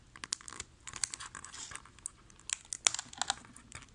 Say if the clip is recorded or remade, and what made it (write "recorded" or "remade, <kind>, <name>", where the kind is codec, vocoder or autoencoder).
recorded